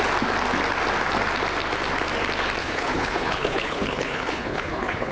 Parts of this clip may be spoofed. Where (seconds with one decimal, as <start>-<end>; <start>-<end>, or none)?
2.6-5.1